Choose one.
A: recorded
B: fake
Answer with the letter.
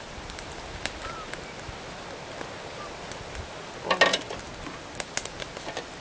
A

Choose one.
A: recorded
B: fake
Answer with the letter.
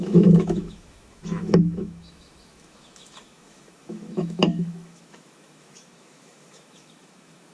B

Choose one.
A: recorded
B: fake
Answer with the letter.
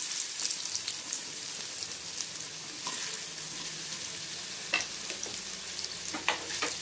A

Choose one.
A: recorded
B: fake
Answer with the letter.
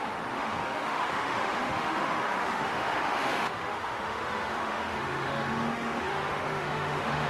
B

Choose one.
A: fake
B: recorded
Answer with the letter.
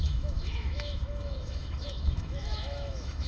A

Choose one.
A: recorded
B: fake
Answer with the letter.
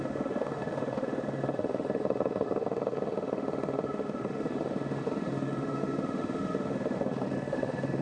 B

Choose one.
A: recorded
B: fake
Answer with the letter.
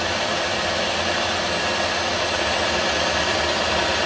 A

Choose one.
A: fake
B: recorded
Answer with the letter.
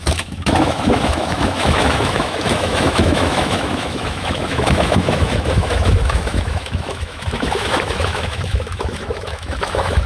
A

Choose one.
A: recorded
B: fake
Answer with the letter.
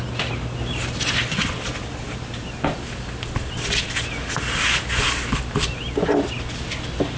A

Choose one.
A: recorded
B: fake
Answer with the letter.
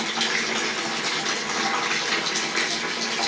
A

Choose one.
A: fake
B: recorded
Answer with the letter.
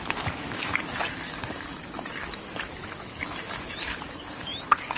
A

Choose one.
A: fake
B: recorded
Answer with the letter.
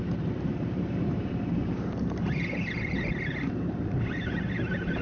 B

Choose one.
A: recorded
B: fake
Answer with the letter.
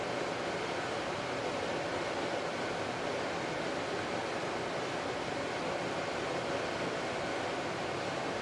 A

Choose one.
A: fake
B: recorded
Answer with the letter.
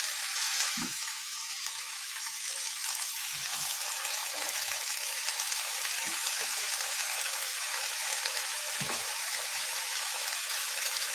A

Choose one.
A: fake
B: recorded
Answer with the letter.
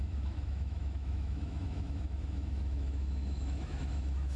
A